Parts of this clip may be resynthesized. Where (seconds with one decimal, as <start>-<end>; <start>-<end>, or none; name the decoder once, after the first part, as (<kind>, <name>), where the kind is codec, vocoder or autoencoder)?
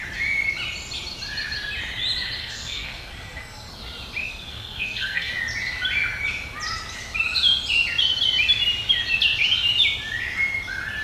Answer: 2.4-3.7 (codec, SNAC); 4.2-5.3